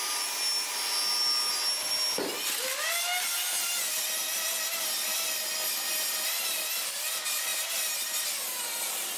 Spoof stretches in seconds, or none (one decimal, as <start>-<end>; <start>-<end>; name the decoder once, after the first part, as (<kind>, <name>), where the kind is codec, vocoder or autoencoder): none